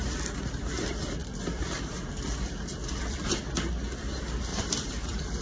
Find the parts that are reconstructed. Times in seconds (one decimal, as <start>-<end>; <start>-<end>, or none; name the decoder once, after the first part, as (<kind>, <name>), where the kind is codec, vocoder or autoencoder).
2.7-3.3 (vocoder, BigVGAN v2); 4.5-5.4